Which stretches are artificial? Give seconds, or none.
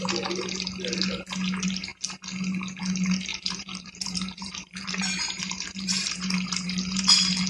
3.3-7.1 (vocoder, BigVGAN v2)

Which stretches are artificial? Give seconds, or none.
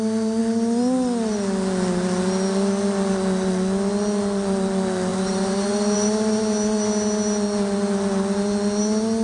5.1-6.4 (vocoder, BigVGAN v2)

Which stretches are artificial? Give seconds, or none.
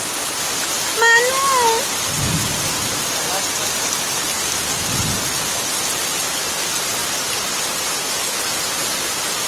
none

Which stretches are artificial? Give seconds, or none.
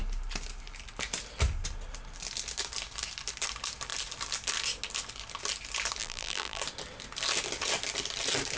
6.0-6.6 (vocoder, BigVGAN v2)